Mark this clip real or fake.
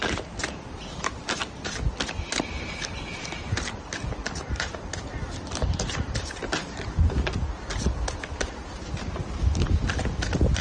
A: real